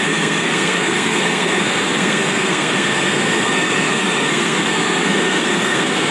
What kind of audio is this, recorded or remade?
remade